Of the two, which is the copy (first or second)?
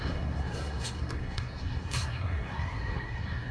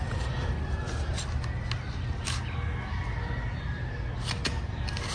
first